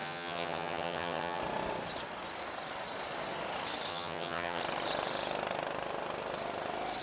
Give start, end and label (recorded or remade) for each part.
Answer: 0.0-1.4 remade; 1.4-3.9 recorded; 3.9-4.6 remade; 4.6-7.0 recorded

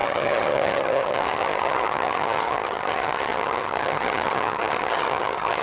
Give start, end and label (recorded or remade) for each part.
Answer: 0.0-5.6 remade

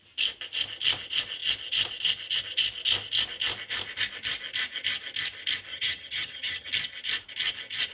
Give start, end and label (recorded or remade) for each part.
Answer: 0.0-5.7 recorded; 5.7-6.7 remade; 6.7-7.9 recorded

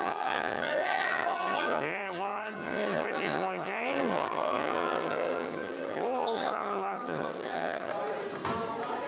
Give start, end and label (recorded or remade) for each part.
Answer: 0.0-7.9 remade; 7.9-9.1 recorded

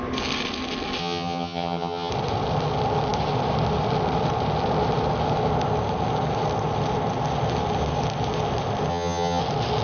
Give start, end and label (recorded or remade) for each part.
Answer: 0.0-1.0 recorded; 1.0-2.1 remade; 2.1-8.9 recorded; 8.9-9.4 remade; 9.4-9.8 recorded